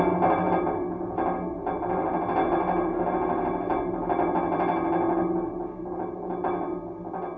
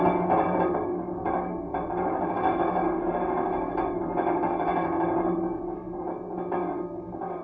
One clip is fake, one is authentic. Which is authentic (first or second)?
first